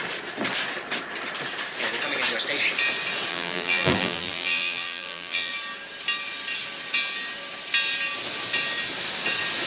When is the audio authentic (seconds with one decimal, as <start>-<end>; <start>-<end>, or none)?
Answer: 0.0-3.3; 5.5-9.7